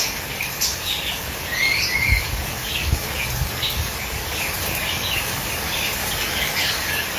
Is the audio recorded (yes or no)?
no